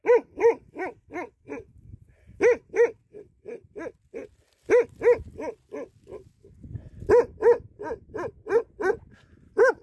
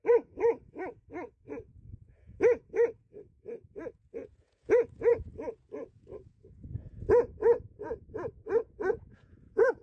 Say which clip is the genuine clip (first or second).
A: first